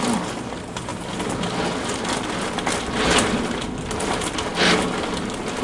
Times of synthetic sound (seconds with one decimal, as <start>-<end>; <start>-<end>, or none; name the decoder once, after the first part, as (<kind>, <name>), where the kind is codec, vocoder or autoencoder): none